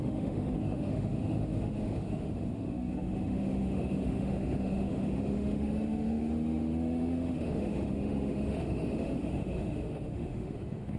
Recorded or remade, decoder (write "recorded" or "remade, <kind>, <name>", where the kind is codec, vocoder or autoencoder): remade, autoencoder, DAC-VAE